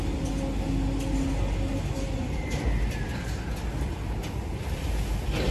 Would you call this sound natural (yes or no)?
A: yes